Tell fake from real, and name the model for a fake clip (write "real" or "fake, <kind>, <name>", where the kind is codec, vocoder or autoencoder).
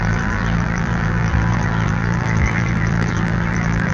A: fake, vocoder, BigVGAN v2